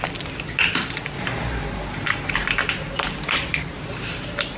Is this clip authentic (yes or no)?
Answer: yes